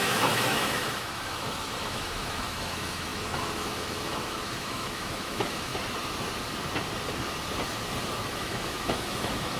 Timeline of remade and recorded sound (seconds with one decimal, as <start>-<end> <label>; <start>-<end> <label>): 0.0-5.7 remade; 5.7-8.3 recorded; 8.3-9.6 remade